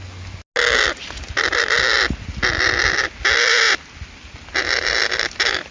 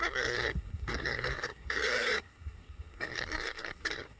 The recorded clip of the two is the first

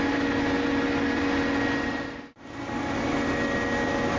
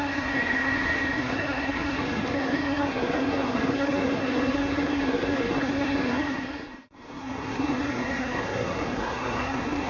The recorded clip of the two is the first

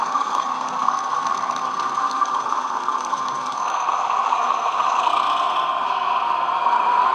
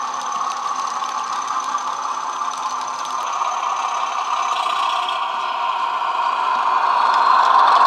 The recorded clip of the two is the second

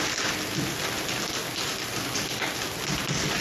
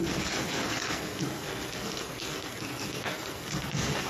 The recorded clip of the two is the first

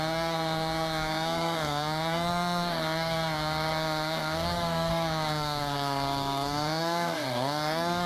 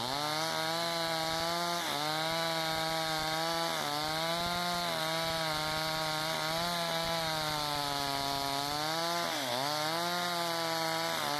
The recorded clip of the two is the second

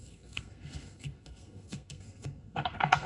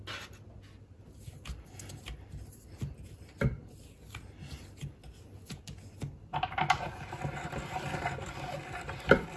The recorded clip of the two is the second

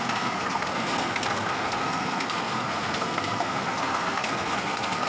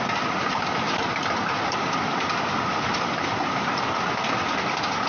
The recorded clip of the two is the second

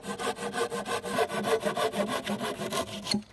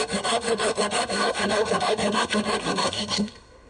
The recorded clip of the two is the first